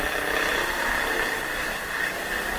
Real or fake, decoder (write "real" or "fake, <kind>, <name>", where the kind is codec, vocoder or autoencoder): real